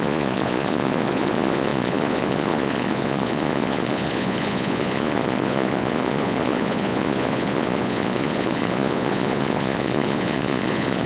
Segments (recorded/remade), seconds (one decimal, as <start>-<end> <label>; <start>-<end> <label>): 0.0-11.1 remade